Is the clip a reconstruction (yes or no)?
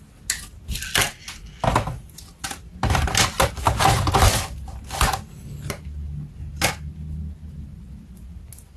no